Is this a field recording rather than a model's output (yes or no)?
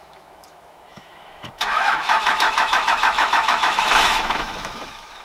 no